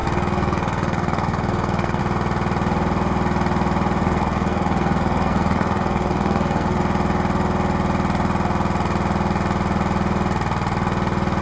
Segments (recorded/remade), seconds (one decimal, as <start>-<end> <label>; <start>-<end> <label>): 0.0-2.0 remade; 2.0-4.0 recorded; 4.0-6.8 remade; 6.8-11.4 recorded